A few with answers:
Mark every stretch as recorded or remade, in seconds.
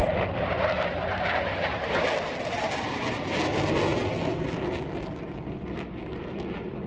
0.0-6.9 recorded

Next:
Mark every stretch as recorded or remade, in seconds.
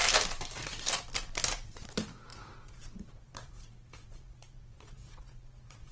0.0-2.3 recorded; 2.3-5.9 remade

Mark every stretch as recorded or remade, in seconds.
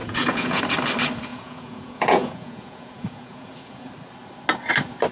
0.0-0.6 remade; 0.6-1.3 recorded; 1.3-3.9 remade; 3.9-5.1 recorded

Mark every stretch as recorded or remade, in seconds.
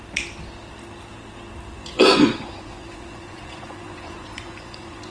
0.0-1.8 recorded; 1.8-5.1 remade